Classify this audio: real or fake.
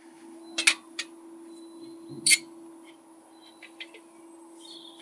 real